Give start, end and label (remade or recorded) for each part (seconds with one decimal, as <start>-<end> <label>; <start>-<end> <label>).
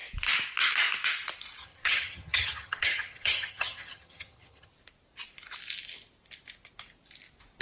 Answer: 0.0-1.6 recorded; 1.6-4.7 remade; 4.7-7.6 recorded